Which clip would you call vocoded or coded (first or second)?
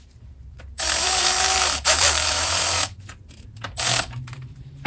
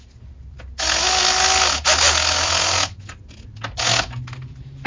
first